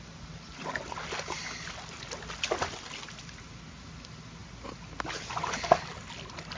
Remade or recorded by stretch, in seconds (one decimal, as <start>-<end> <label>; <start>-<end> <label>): 0.0-6.6 recorded